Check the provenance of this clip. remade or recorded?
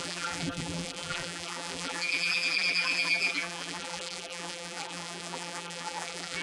remade